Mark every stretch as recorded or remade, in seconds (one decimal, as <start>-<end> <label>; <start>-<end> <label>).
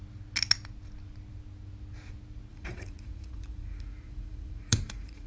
0.0-2.5 recorded; 2.5-5.3 remade